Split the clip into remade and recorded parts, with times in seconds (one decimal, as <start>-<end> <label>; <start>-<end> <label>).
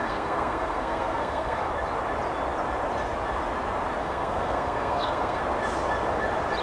0.0-1.7 remade; 1.7-4.0 recorded; 4.0-5.4 remade; 5.4-6.6 recorded